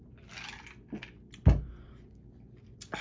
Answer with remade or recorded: recorded